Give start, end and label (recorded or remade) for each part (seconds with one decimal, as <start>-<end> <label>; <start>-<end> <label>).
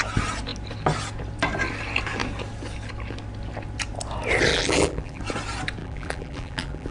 0.0-4.5 recorded; 4.5-5.2 remade; 5.2-5.8 recorded; 5.8-6.9 remade